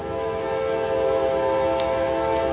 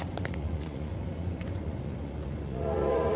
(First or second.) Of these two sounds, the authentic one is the first